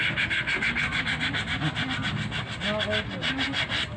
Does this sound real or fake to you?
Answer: real